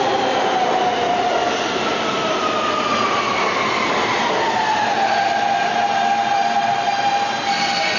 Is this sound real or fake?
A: real